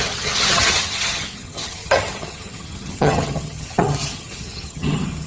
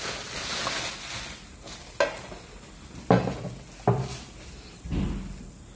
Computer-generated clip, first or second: first